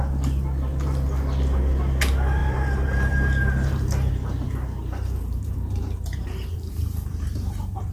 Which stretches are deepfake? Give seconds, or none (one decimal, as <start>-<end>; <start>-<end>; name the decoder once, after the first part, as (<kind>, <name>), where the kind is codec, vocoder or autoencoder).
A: 2.4-4.1 (vocoder, BigVGAN v2); 4.8-7.9